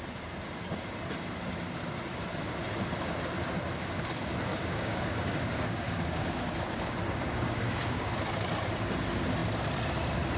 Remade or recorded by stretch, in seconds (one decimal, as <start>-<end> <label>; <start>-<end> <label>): 0.0-4.5 recorded; 4.5-8.1 remade; 8.1-10.4 recorded